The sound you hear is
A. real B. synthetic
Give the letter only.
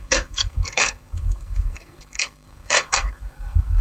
B